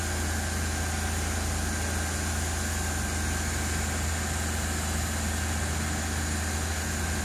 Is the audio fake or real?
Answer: real